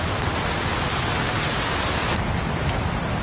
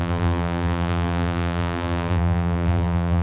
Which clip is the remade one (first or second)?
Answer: second